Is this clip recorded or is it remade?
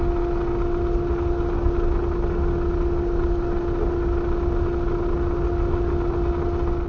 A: recorded